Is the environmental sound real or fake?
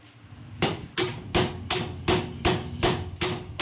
real